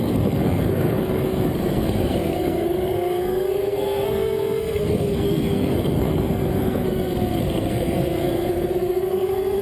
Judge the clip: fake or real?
fake